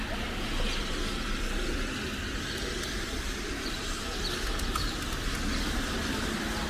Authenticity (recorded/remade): recorded